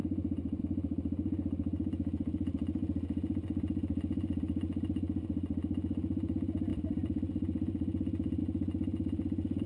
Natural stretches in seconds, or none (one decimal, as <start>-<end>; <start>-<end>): 0.0-6.7; 8.4-9.7